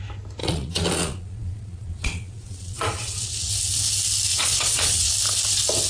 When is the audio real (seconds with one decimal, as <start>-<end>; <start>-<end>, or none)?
0.0-0.4; 3.5-4.3; 5.1-5.9